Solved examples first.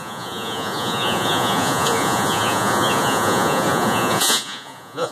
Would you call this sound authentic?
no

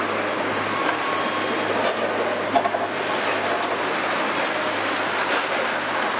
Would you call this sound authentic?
yes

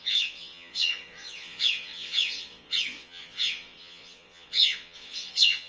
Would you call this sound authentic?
no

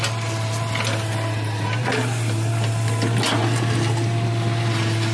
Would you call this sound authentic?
yes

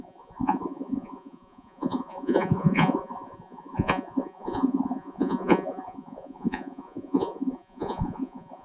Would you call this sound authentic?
no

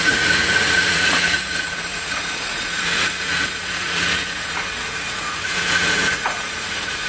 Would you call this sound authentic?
no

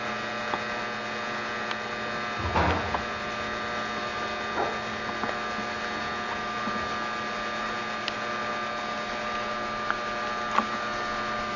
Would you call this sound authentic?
yes